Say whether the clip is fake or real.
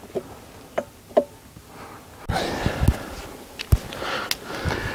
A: real